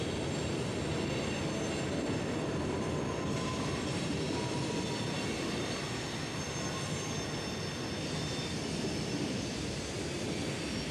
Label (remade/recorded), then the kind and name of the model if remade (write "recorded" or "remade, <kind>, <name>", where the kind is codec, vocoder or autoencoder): recorded